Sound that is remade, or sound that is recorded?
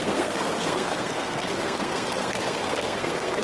remade